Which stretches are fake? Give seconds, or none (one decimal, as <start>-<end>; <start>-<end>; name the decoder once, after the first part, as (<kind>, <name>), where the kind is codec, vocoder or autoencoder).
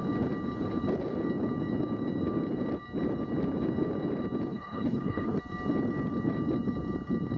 4.5-5.4 (codec, HILCodec)